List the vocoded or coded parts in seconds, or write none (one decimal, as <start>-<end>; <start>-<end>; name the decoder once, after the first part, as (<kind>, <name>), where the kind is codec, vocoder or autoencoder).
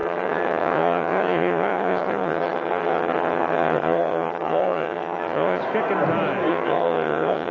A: 0.0-5.6 (vocoder, HiFi-GAN); 6.5-7.5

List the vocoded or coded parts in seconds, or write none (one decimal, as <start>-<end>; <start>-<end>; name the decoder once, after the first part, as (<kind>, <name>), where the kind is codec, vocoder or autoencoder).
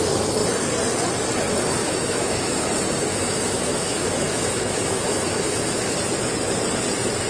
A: 1.8-2.7 (autoencoder, DAC-VAE); 3.1-6.0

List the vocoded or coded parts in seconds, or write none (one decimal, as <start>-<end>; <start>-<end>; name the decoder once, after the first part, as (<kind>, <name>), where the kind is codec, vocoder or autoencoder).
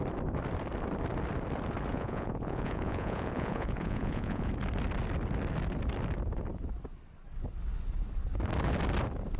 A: 1.9-4.5 (vocoder, Vocos)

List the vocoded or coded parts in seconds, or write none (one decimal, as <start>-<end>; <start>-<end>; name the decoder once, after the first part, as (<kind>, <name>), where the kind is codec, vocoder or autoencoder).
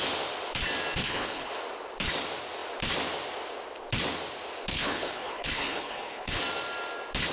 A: 1.0-1.5 (codec, HILCodec); 4.7-6.4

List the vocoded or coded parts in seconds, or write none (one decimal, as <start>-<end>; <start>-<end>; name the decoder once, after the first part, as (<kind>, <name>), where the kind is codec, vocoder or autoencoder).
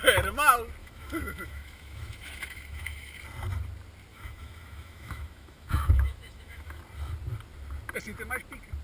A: 0.8-3.2 (autoencoder, DAC-VAE); 4.1-6.8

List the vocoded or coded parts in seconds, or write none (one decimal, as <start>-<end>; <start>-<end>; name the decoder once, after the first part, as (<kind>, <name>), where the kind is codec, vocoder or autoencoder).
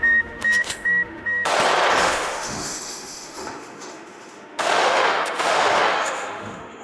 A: 0.0-1.5 (autoencoder, DAC-VAE); 2.0-6.8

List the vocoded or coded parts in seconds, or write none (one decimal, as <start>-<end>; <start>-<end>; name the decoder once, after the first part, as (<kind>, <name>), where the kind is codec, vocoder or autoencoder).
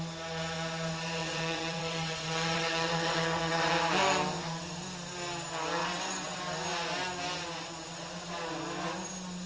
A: 1.2-3.7 (vocoder, WaveNeXt); 5.8-6.4